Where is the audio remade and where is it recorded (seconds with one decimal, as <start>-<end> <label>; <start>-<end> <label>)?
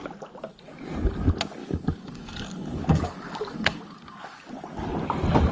0.0-1.6 recorded; 1.6-4.5 remade; 4.5-5.5 recorded